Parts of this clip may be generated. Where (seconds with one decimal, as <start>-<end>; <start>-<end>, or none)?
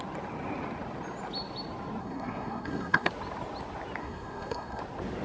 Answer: 2.0-3.1; 4.0-4.8